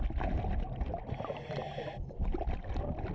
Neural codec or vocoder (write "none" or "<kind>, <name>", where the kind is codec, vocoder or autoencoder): none